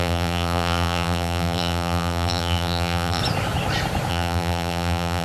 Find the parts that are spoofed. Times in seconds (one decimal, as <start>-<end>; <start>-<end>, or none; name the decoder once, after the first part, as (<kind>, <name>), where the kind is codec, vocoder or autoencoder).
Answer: 0.0-3.2 (vocoder, BigVGAN v2); 4.1-5.2